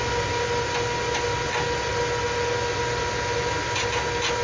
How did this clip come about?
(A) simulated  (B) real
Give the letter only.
B